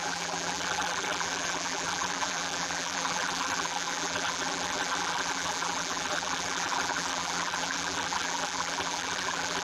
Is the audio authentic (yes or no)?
no